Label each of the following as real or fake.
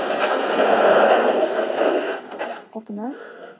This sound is fake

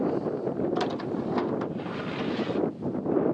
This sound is real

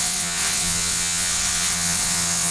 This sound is fake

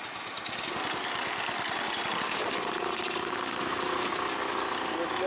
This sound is real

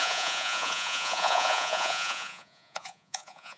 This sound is fake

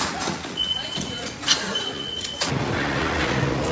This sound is fake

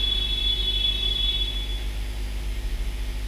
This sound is real